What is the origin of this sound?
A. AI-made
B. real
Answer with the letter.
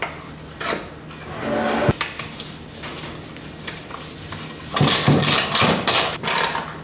B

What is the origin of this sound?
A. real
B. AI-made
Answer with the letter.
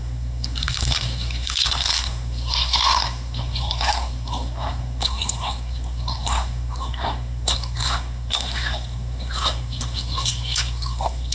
B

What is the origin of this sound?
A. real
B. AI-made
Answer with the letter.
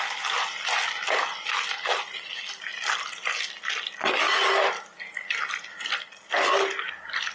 A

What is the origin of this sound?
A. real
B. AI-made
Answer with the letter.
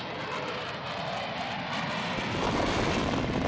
A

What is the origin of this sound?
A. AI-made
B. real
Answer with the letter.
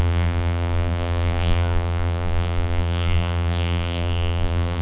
A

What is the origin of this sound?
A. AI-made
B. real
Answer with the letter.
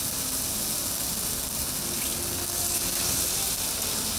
B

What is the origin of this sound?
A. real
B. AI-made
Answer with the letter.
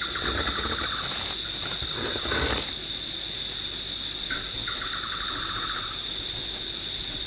A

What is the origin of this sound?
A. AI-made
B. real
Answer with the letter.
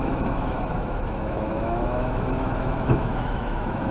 A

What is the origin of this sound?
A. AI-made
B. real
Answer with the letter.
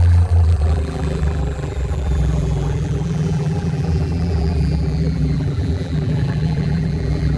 A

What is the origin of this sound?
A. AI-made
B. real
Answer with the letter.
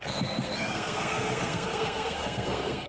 A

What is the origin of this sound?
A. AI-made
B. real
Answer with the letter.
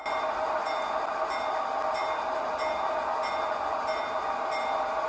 B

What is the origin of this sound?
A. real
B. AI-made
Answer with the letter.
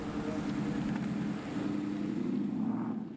A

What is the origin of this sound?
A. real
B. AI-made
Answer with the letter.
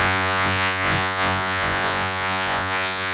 B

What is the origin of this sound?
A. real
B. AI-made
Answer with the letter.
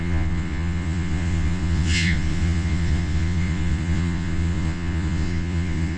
B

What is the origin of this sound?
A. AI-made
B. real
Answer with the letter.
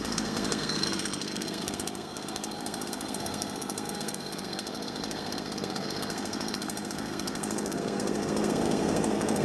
A